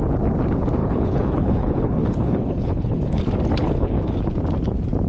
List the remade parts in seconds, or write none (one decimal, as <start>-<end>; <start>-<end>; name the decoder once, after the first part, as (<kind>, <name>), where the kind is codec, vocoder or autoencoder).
0.8-3.2 (codec, HILCodec); 3.6-4.2